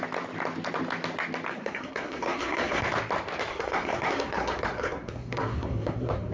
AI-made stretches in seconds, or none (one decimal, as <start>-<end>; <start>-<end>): 1.5-2.8; 3.5-6.3